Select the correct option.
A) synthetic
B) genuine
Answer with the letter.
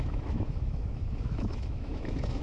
A